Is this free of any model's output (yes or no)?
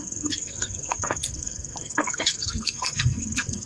no